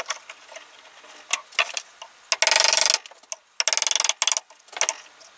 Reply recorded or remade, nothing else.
recorded